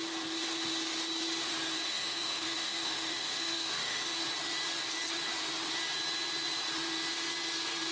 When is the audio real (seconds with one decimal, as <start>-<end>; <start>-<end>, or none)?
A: 0.0-1.9; 4.2-7.9

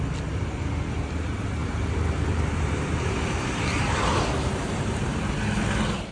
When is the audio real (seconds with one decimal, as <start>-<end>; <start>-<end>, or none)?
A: 0.0-1.6; 5.3-6.1

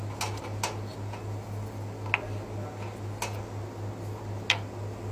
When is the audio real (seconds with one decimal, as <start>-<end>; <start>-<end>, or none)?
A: 0.0-5.1